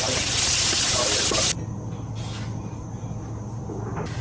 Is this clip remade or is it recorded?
recorded